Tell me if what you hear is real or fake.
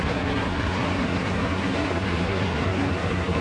fake